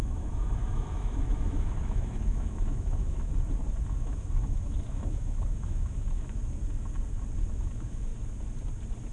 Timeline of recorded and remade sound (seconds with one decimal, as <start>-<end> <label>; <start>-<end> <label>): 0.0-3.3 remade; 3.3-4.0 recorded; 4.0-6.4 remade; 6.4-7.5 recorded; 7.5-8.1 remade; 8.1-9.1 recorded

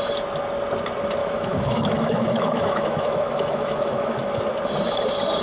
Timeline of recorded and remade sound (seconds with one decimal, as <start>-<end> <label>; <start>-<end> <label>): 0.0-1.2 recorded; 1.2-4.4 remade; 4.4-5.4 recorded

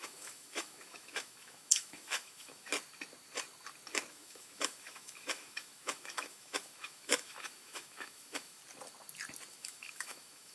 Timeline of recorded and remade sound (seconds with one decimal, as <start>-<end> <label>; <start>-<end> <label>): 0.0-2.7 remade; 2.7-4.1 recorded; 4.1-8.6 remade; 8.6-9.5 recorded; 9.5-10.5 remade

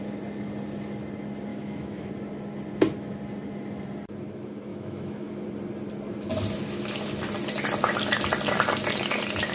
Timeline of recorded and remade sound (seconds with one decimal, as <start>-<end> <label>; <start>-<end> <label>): 0.0-1.5 recorded; 1.5-2.1 remade; 2.1-4.7 recorded; 4.7-5.3 remade; 5.3-9.5 recorded